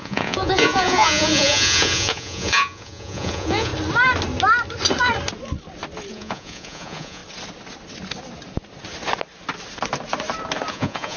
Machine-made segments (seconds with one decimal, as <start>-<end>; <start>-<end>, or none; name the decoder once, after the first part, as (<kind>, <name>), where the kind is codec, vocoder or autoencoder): 0.0-3.7 (vocoder, Vocos); 6.1-7.2; 10.7-11.2